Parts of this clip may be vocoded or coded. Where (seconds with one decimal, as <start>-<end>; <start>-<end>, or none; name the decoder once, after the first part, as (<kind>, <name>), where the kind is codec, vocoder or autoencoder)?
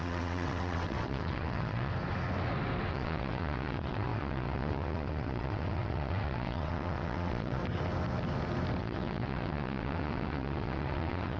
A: 0.0-1.9 (vocoder, WaveNeXt); 2.9-7.6; 8.8-11.4